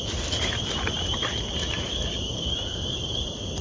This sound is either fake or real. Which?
real